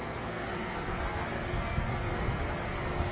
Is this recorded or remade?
remade